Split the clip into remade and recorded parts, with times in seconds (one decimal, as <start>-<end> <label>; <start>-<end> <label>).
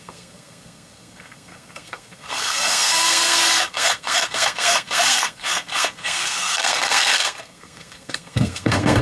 0.0-9.0 remade